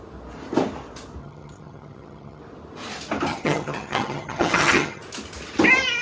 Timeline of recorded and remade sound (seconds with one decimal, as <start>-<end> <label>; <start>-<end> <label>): 0.0-1.2 recorded; 1.2-2.4 remade; 2.4-3.3 recorded; 3.3-5.0 remade; 5.0-6.0 recorded